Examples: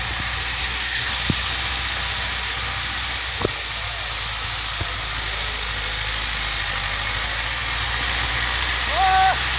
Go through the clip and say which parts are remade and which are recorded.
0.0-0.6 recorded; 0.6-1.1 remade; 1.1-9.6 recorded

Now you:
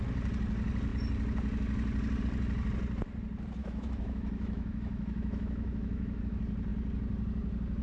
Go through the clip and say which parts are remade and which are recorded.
0.0-3.6 recorded; 3.6-6.2 remade; 6.2-7.8 recorded

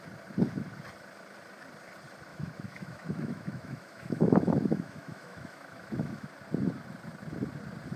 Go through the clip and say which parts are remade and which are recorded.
0.0-2.3 recorded; 2.3-6.3 remade; 6.3-8.0 recorded

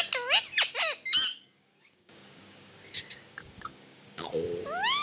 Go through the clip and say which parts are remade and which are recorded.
0.0-1.3 recorded; 1.3-4.3 remade; 4.3-5.0 recorded

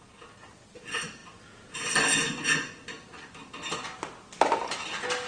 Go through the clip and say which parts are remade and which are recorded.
0.0-5.3 recorded

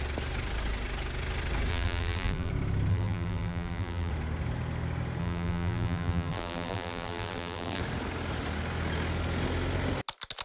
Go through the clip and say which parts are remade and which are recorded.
0.0-1.7 recorded; 1.7-2.5 remade; 2.5-2.9 recorded; 2.9-4.1 remade; 4.1-5.2 recorded; 5.2-7.8 remade; 7.8-10.4 recorded